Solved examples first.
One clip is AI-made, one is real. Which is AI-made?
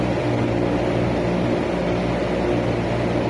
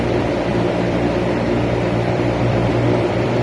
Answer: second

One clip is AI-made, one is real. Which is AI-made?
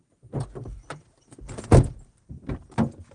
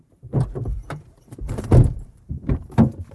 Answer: second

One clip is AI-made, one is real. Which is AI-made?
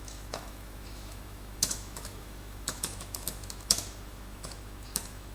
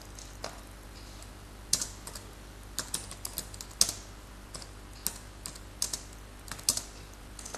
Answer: first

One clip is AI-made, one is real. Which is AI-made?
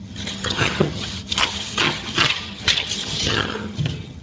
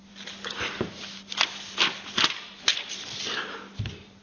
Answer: first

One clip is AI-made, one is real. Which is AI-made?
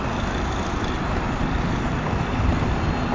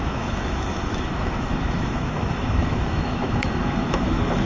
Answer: second